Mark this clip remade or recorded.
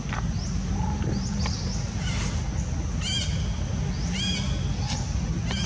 recorded